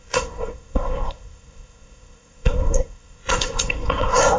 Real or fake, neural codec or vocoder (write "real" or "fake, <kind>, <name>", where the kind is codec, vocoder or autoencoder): fake, codec, SNAC